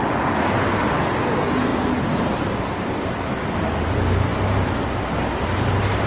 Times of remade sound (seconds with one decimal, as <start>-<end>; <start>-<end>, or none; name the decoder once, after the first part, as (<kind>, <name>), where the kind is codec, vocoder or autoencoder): none